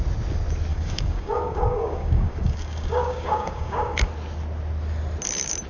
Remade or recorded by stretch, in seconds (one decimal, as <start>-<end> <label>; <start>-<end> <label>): 0.0-0.7 recorded; 0.7-4.1 remade; 4.1-5.7 recorded